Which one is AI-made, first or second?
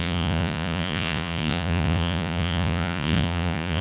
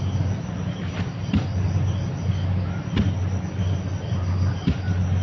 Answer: first